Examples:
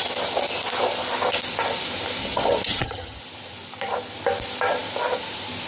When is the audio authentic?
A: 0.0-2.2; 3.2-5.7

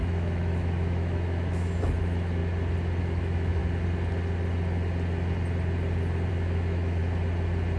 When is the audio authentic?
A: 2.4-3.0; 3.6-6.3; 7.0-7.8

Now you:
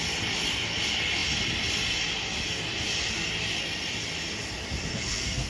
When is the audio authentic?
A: 0.0-4.9

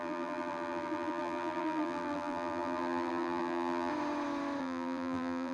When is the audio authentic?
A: 3.9-4.6

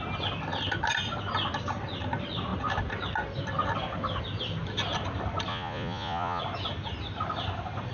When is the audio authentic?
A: 0.0-5.5; 6.4-7.9

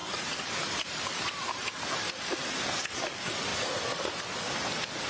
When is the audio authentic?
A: 2.8-3.5; 4.2-5.1

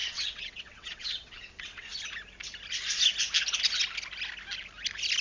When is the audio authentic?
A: 1.9-5.2